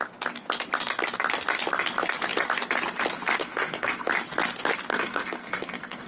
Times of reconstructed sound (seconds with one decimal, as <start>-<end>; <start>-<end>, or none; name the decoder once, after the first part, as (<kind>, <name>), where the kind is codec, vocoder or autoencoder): 3.4-4.1 (codec, SNAC); 4.9-6.1

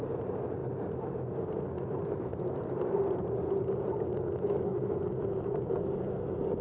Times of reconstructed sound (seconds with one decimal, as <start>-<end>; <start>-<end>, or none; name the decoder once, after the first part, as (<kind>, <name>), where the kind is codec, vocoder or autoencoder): 0.6-1.4 (vocoder, BigVGAN v2); 2.3-3.9; 4.7-5.8

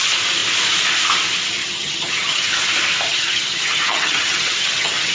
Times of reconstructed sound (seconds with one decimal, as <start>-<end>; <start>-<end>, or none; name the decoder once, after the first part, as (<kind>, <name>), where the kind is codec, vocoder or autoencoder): 1.6-2.5 (vocoder, HiFi-GAN); 3.1-5.1

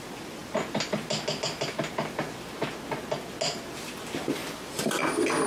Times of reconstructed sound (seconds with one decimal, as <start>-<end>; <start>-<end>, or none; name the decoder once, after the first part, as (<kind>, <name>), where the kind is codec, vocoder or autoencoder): none

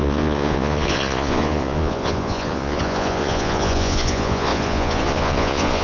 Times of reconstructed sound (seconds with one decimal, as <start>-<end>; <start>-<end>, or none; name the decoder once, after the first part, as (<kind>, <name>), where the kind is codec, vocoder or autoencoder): 0.0-5.8 (vocoder, Vocos)